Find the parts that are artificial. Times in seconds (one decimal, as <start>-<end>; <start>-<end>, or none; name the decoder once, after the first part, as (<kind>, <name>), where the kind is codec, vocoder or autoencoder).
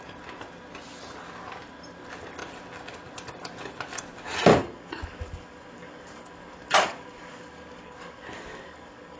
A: 4.5-9.2 (codec, DAC)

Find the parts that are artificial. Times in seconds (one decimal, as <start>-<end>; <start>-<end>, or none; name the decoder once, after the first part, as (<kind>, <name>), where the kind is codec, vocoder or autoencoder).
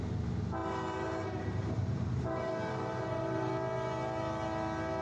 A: 0.6-3.5 (vocoder, BigVGAN v2)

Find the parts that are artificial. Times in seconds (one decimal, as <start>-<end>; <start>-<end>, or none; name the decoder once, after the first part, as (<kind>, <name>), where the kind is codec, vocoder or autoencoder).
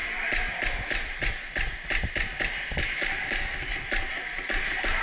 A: 3.2-3.7 (codec, DAC)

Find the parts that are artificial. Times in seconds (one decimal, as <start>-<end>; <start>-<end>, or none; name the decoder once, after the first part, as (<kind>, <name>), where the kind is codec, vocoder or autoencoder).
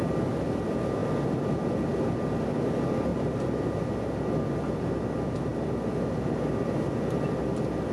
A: 3.1-4.3 (vocoder, BigVGAN v2)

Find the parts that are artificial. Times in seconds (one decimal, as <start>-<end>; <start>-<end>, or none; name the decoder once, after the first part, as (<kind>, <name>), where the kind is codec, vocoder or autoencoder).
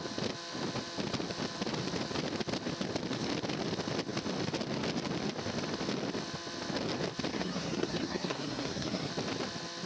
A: 7.3-9.1 (codec, SNAC)